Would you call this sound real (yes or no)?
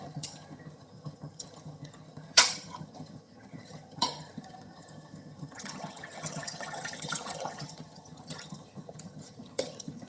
no